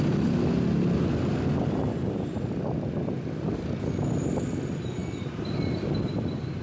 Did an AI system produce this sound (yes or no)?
no